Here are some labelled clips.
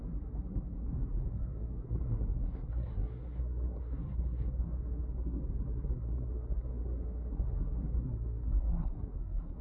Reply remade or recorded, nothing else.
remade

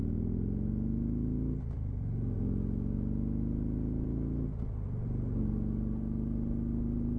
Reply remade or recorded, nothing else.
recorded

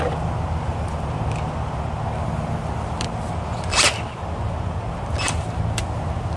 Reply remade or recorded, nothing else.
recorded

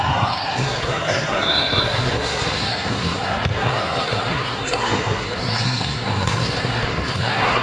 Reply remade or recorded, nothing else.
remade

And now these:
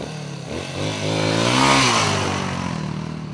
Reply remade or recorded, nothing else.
recorded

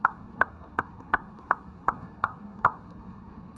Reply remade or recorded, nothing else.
remade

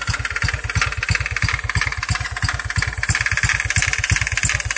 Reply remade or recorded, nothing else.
recorded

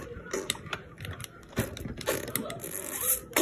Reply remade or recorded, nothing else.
recorded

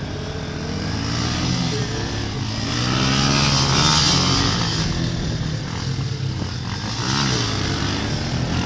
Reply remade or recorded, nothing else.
recorded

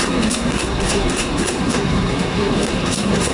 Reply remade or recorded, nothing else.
remade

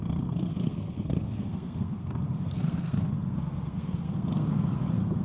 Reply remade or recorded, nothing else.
remade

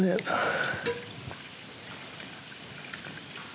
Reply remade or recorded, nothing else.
recorded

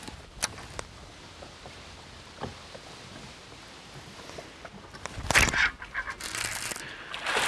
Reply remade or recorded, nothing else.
recorded